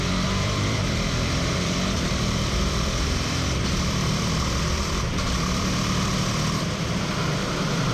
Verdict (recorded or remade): remade